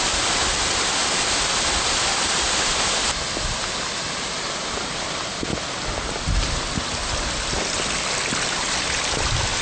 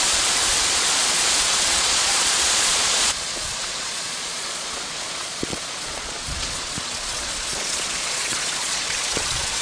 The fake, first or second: second